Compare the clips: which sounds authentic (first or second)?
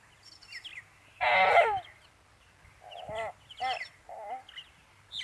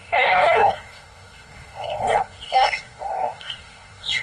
first